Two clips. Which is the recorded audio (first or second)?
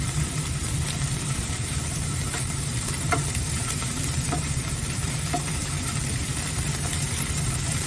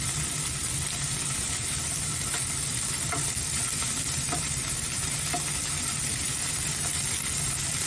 second